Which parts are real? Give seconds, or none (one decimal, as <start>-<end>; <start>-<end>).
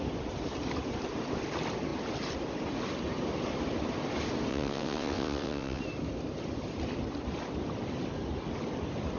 0.0-4.5; 5.8-9.2